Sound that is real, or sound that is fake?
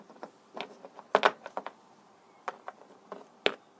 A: real